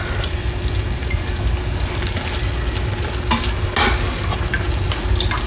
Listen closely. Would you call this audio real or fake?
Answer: real